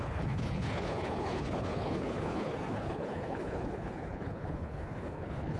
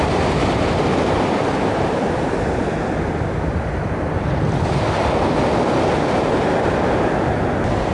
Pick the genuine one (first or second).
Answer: second